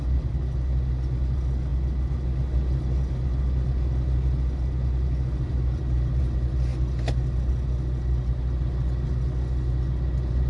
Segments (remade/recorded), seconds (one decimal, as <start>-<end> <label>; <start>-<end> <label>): 0.0-10.5 recorded